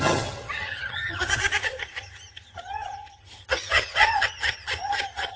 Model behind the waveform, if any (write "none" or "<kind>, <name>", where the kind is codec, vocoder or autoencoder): vocoder, HiFi-GAN